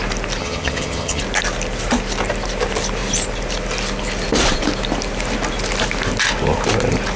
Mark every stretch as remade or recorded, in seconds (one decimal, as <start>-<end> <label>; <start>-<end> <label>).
0.0-0.4 recorded; 0.4-1.2 remade; 1.2-7.2 recorded